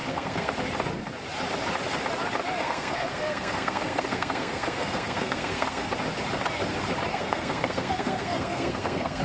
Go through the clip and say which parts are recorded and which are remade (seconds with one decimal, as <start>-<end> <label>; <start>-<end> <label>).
0.0-0.5 remade; 0.5-2.6 recorded; 2.6-5.9 remade; 5.9-7.1 recorded; 7.1-9.2 remade